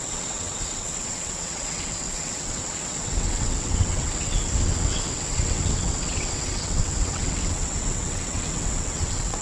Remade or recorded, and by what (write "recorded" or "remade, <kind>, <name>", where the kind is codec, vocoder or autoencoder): remade, vocoder, WaveNeXt